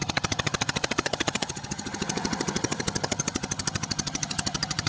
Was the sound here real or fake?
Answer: fake